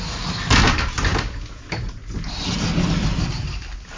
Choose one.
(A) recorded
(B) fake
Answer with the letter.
A